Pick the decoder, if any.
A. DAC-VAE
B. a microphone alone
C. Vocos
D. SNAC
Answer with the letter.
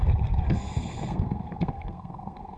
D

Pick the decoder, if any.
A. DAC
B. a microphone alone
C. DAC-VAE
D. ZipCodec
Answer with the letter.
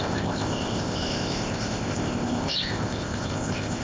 D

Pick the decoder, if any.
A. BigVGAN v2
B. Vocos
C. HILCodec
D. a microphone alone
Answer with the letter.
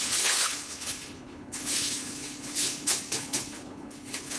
C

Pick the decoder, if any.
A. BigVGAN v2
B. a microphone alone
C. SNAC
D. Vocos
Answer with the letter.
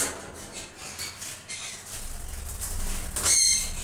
B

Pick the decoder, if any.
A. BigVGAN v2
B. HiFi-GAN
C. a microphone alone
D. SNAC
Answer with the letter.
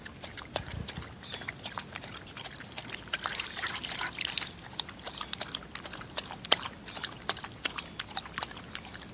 A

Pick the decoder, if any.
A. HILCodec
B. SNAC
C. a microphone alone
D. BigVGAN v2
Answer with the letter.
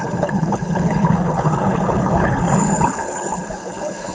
A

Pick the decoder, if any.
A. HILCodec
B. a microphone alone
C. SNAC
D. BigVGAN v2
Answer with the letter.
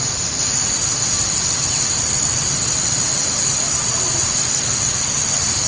B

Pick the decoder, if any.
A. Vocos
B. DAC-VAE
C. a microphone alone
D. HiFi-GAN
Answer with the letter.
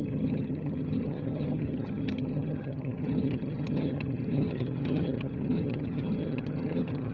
D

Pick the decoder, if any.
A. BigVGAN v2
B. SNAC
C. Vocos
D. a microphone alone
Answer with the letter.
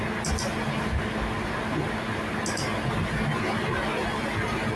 D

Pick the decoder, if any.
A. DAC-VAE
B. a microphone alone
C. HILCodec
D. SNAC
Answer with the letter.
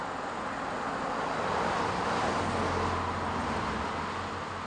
B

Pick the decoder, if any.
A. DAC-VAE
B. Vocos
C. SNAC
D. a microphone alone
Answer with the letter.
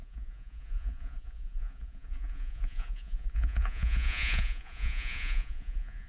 B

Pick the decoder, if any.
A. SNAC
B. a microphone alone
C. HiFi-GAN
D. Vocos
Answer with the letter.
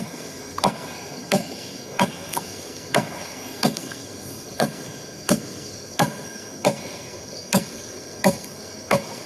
A